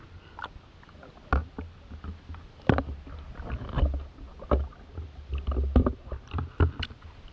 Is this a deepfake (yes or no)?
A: no